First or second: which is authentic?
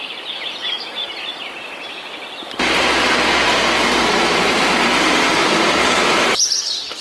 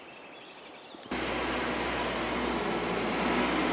second